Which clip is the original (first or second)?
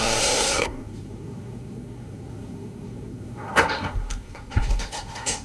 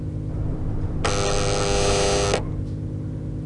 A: second